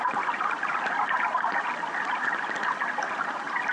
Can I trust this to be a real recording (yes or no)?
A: yes